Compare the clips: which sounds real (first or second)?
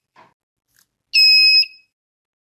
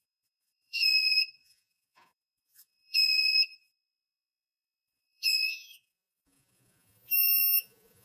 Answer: first